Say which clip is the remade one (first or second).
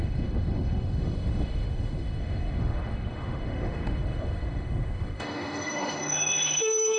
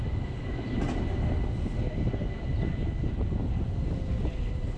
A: first